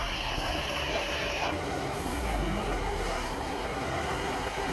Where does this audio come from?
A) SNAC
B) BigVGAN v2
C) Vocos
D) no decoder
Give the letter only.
A